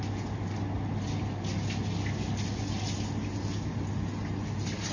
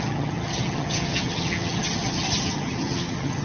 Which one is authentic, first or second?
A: first